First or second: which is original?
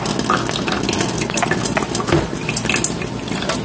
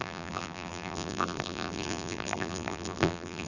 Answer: first